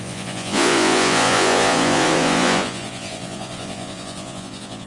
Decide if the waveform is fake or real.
fake